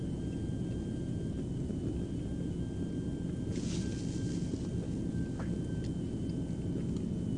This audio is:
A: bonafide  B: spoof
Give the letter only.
A